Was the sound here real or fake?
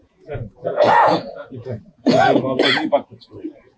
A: fake